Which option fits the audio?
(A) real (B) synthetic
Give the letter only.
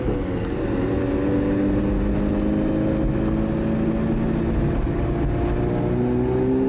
A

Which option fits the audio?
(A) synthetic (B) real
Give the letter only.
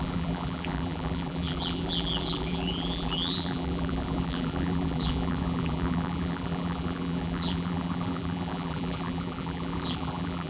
A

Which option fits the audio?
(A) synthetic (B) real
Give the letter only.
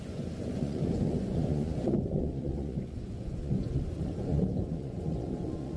A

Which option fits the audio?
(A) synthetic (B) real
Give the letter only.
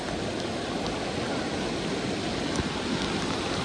B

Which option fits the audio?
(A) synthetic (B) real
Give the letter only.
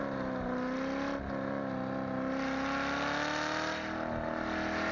B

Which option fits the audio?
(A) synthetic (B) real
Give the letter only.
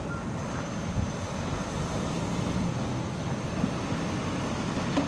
B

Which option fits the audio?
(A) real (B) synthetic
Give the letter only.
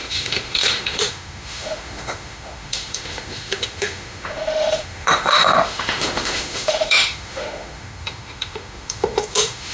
B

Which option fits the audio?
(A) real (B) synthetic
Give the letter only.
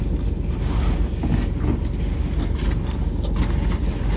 A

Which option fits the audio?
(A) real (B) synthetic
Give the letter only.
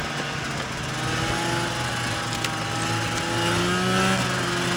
A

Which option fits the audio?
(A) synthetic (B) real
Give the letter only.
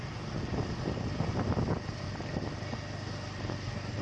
B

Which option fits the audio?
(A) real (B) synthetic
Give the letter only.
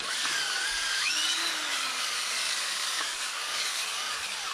B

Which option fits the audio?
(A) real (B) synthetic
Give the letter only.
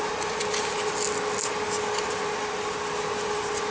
A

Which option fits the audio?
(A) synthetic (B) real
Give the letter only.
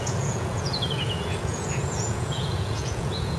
A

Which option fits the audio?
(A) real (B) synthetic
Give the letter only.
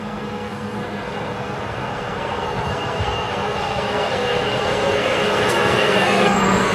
B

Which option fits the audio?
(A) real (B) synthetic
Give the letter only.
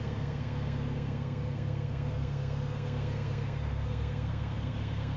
B